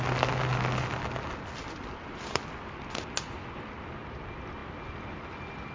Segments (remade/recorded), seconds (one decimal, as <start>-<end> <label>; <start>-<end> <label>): 0.0-5.7 recorded